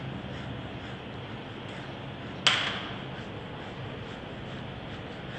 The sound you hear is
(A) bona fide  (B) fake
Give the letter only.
A